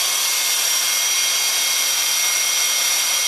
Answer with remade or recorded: recorded